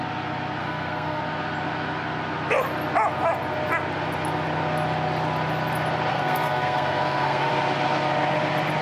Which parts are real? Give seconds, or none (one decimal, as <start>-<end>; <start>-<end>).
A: 0.0-0.6; 1.2-6.1; 7.5-8.8